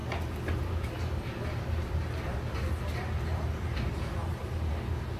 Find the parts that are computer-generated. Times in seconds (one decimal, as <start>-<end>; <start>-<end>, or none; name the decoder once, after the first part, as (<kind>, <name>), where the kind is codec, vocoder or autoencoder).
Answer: none